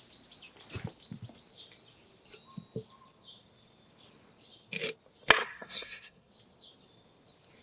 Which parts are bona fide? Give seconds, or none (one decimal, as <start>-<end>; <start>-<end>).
0.0-5.4; 6.3-7.6